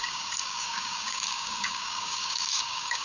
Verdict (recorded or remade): remade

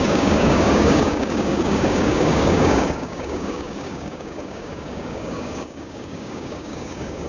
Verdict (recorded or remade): remade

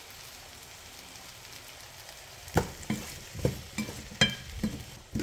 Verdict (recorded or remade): recorded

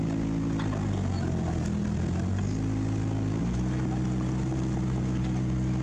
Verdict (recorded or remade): recorded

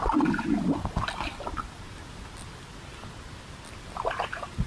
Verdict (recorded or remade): recorded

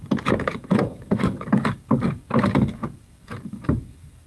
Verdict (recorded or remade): remade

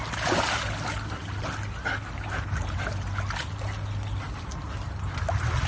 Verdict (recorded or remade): recorded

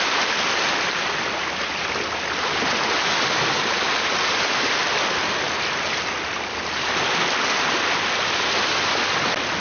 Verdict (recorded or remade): recorded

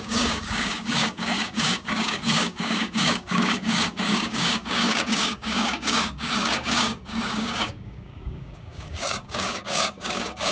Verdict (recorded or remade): remade